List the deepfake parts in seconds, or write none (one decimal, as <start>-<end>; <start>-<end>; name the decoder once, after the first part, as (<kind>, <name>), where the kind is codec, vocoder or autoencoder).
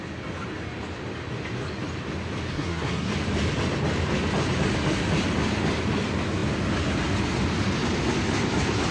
2.5-3.1 (codec, SNAC)